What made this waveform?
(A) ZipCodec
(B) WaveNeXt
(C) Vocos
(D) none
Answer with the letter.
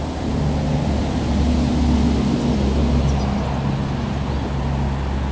D